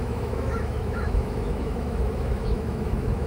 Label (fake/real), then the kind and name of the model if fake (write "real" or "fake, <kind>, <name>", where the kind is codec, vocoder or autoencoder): fake, autoencoder, DAC-VAE